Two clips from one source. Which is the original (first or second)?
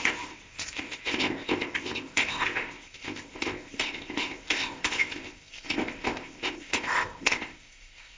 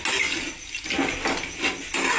second